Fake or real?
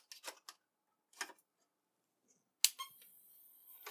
real